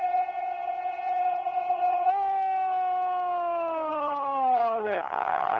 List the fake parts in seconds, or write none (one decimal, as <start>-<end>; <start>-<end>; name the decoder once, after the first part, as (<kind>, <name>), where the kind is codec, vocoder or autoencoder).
0.0-2.1 (vocoder, HiFi-GAN); 3.9-5.6